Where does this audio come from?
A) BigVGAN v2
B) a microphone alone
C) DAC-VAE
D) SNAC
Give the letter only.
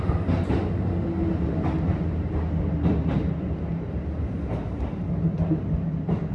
B